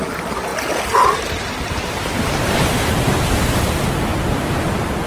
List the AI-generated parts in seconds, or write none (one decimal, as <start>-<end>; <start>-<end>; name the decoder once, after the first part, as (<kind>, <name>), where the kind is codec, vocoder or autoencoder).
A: none